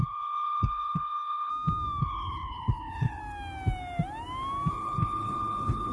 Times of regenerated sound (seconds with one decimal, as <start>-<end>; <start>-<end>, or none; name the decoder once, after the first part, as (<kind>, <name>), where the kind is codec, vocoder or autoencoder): 0.0-1.5 (codec, HILCodec); 2.0-3.2; 4.7-5.9